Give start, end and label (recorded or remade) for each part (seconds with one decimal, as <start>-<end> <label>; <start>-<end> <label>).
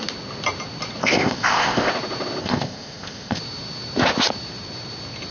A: 0.0-1.0 recorded; 1.0-1.9 remade; 1.9-2.4 recorded; 2.4-3.4 remade; 3.4-5.3 recorded